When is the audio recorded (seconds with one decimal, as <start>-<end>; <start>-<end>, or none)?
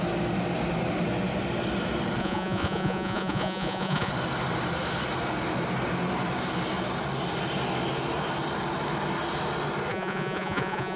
0.0-2.2; 4.1-9.9